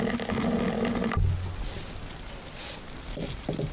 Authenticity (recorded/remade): recorded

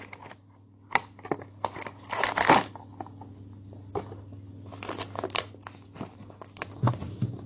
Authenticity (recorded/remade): remade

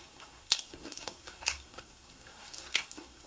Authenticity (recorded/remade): remade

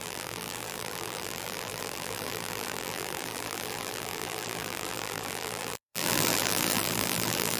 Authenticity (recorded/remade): remade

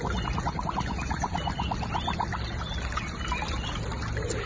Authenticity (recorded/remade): recorded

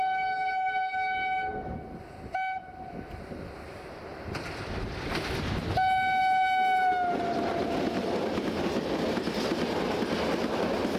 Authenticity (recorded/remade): recorded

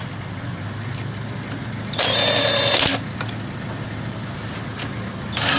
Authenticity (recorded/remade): recorded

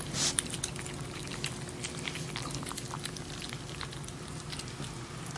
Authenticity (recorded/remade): recorded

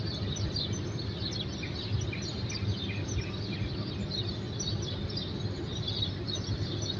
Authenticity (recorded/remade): recorded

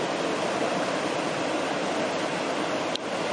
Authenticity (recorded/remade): recorded